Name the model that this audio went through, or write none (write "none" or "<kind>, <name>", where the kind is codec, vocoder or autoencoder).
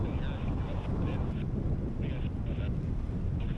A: none